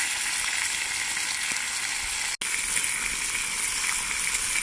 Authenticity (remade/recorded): recorded